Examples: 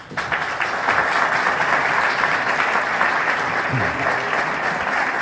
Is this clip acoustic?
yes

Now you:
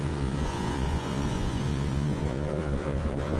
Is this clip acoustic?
no